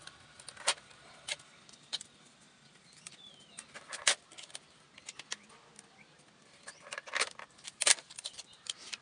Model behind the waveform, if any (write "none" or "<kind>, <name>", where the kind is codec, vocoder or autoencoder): none